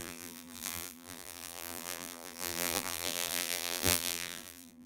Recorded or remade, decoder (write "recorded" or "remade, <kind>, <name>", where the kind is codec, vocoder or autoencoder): remade, vocoder, BigVGAN v2